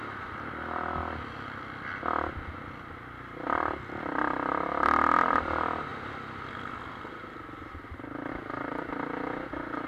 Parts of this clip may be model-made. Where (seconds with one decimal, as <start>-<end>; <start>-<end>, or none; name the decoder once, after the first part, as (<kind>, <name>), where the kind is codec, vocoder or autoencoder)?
none